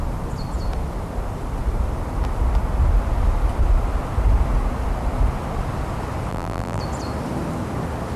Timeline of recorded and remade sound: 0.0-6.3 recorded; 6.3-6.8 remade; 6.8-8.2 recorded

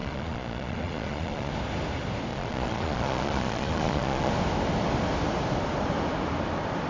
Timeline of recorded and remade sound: 0.0-1.5 remade; 1.5-2.3 recorded; 2.3-4.3 remade; 4.3-6.9 recorded

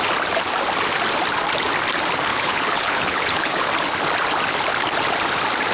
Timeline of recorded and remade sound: 0.0-2.3 recorded; 2.3-3.7 remade; 3.7-5.7 recorded

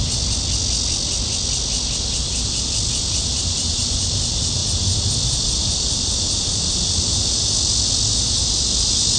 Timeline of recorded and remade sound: 0.0-9.2 recorded

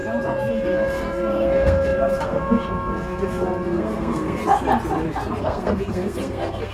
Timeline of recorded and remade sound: 0.0-0.5 recorded; 0.5-4.4 remade; 4.4-5.4 recorded; 5.4-6.7 remade

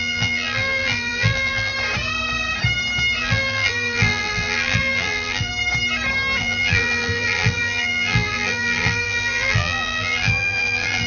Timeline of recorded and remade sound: 0.0-1.7 remade; 1.7-3.2 recorded; 3.2-5.5 remade; 5.5-6.4 recorded; 6.4-11.1 remade

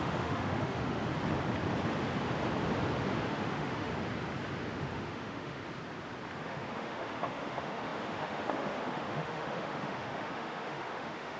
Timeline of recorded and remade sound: 0.0-1.1 remade; 1.1-3.3 recorded; 3.3-3.9 remade; 3.9-4.7 recorded; 4.7-5.6 remade; 5.6-6.4 recorded; 6.4-11.4 remade